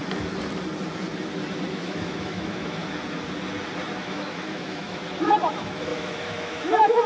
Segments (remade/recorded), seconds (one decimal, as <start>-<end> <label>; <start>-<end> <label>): 0.0-1.7 recorded; 1.7-2.8 remade; 2.8-4.0 recorded; 4.0-5.0 remade; 5.0-5.5 recorded; 5.5-7.1 remade